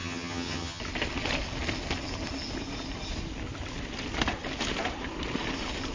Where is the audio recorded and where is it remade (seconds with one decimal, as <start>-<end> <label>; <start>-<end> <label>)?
0.0-0.8 remade; 0.8-5.9 recorded